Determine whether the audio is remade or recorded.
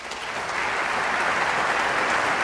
recorded